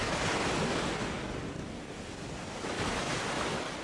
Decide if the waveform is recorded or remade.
remade